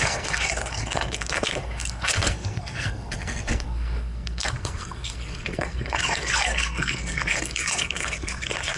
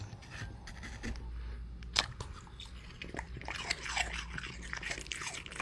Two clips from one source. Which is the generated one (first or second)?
first